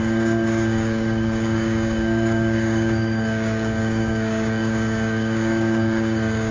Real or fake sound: fake